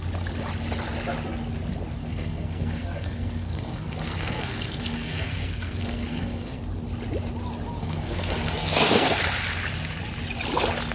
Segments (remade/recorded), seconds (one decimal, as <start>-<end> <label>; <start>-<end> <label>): 0.0-2.0 recorded; 2.0-6.6 remade; 6.6-7.8 recorded; 7.8-9.2 remade; 9.2-10.9 recorded